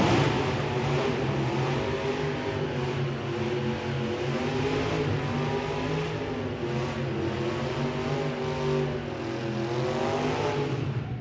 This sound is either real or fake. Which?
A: real